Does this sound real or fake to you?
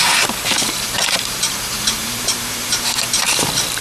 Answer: fake